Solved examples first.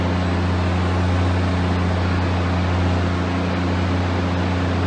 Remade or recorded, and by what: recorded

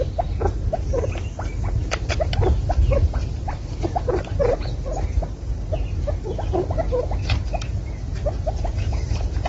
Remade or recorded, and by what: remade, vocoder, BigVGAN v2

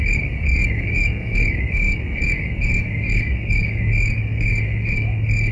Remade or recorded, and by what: remade, codec, DAC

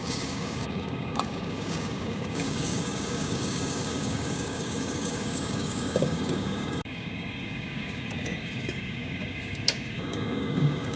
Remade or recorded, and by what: remade, codec, DAC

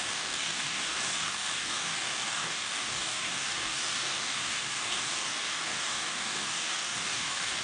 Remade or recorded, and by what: remade, codec, DAC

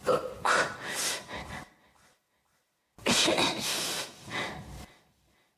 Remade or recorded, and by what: recorded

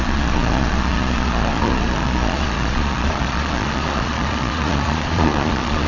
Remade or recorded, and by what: remade, vocoder, Vocos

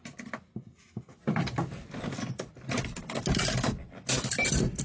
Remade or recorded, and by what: recorded